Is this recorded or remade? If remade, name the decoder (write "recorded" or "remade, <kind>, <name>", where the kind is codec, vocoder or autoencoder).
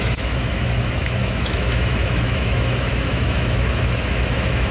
remade, autoencoder, DAC-VAE